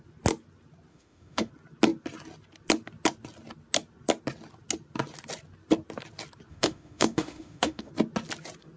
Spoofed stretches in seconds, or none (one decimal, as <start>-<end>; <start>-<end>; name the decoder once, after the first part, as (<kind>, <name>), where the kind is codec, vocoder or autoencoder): 0.9-1.5 (autoencoder, DAC-VAE); 6.5-7.9